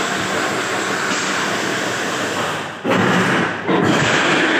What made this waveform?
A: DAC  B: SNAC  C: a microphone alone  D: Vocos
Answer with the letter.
C